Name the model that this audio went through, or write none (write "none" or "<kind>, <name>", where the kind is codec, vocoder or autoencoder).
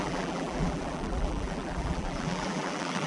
vocoder, BigVGAN v2